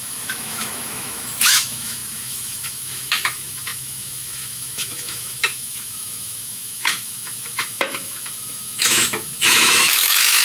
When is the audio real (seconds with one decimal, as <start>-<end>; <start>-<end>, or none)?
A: none